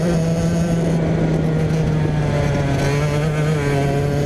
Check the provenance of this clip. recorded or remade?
recorded